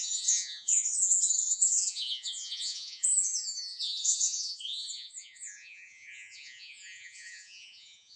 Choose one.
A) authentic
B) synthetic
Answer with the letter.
B